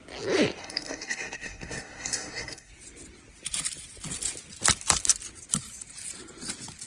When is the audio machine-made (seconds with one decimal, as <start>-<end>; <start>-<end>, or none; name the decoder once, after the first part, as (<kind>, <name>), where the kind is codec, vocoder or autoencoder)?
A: 0.6-2.7 (codec, SNAC)